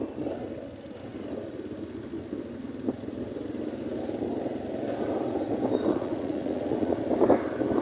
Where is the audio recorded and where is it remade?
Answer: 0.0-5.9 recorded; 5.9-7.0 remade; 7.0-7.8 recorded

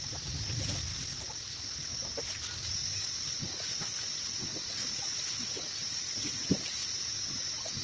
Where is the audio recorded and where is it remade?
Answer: 0.0-0.9 recorded; 0.9-1.5 remade; 1.5-2.0 recorded; 2.0-3.4 remade; 3.4-5.8 recorded; 5.8-6.4 remade; 6.4-7.8 recorded